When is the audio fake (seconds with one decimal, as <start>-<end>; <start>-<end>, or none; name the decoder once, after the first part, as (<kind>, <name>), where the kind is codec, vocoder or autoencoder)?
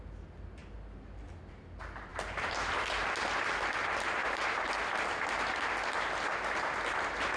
2.1-2.9 (vocoder, BigVGAN v2); 4.2-4.7